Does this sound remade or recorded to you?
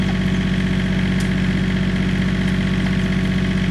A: recorded